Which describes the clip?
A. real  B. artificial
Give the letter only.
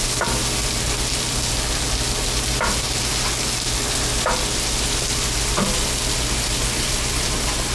A